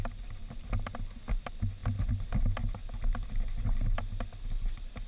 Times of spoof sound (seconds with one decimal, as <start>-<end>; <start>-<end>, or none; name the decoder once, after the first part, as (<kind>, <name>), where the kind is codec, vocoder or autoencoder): none